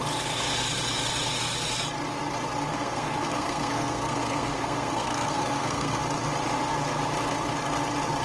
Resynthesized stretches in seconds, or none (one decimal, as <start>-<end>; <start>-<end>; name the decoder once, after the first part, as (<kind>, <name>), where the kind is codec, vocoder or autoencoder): 2.7-6.0 (codec, SNAC)